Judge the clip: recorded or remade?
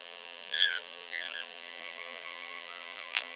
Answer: remade